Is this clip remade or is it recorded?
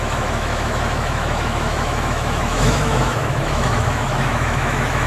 remade